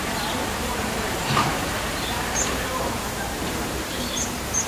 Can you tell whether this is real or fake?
fake